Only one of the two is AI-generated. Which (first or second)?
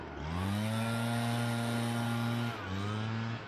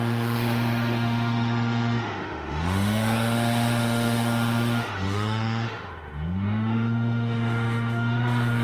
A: second